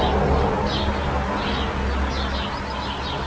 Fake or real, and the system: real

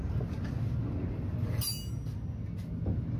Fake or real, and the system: real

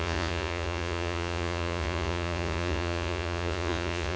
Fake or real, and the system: fake, vocoder, Vocos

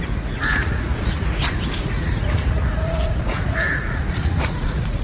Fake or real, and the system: fake, vocoder, Vocos